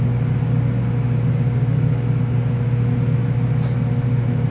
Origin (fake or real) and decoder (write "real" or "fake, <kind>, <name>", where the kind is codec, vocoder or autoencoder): real